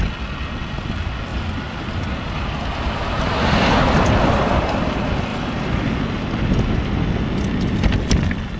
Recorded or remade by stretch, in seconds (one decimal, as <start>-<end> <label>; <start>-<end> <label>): 0.0-1.3 recorded; 1.3-2.4 remade; 2.4-5.3 recorded; 5.3-6.9 remade; 6.9-8.6 recorded